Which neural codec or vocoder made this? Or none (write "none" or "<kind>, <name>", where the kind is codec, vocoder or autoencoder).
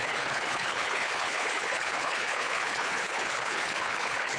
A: codec, HILCodec